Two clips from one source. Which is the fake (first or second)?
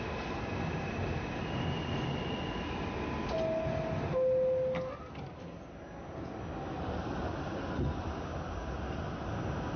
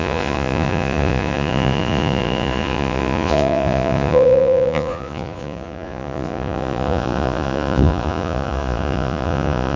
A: second